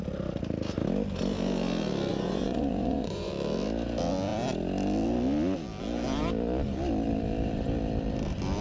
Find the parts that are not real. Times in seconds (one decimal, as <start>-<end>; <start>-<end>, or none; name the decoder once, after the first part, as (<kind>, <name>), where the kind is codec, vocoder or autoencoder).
2.1-3.3 (vocoder, Vocos)